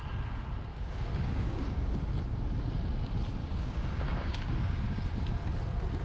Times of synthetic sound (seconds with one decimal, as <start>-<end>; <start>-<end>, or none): 0.7-1.9; 3.4-5.3